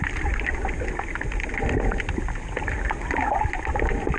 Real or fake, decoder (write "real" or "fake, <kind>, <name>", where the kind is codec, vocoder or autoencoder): real